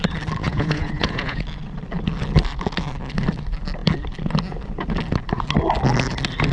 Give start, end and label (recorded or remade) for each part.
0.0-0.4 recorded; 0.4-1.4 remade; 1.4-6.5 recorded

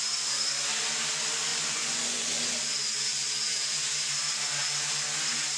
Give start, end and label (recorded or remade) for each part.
0.0-1.5 recorded; 1.5-2.4 remade; 2.4-5.6 recorded